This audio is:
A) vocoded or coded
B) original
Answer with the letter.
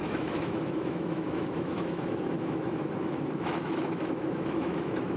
A